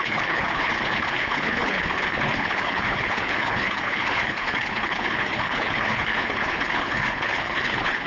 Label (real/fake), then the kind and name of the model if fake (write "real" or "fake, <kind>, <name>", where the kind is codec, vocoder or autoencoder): fake, codec, HILCodec